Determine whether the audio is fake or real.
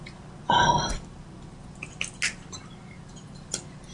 real